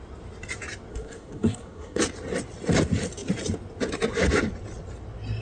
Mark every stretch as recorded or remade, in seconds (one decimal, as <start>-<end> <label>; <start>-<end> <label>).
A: 0.0-0.9 recorded; 0.9-2.0 remade; 2.0-5.4 recorded